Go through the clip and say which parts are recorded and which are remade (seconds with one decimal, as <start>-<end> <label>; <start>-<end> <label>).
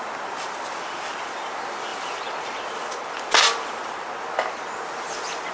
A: 0.0-5.5 recorded